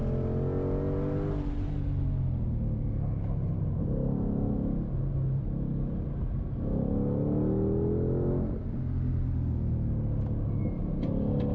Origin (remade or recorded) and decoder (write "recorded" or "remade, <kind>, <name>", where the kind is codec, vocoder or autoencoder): recorded